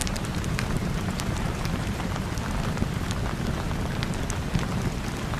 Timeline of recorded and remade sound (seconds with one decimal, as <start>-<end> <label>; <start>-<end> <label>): 0.0-2.1 remade; 2.1-5.4 recorded